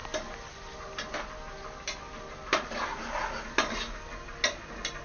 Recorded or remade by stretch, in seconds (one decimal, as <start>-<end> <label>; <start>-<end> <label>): 0.0-5.0 recorded